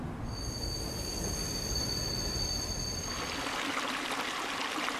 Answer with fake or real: real